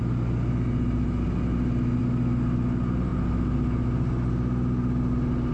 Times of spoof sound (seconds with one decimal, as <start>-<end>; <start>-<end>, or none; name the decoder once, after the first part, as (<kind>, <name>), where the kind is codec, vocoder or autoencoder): none